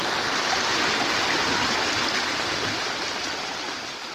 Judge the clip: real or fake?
real